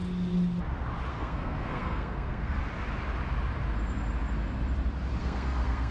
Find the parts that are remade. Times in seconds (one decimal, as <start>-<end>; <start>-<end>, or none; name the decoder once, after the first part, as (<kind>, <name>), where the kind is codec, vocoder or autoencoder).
1.1-2.6 (codec, SNAC); 5.2-5.9